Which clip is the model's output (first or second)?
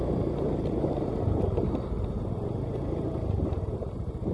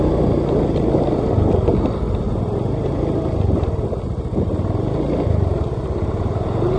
first